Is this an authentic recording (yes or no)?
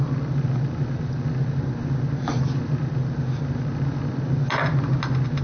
yes